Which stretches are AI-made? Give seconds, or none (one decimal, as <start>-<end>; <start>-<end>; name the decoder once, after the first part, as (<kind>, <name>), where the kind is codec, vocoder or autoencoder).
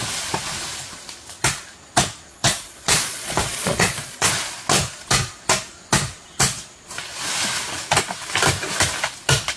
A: 2.3-4.3 (vocoder, Vocos)